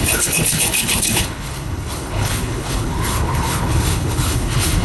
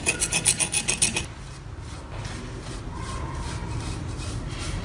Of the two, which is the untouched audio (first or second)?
second